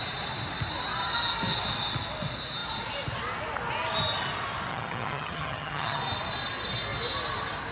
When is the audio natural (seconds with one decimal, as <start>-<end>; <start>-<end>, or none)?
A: 0.0-4.7; 6.0-7.7